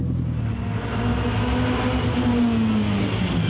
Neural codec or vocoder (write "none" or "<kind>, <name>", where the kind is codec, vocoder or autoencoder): none